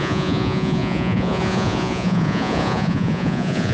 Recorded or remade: remade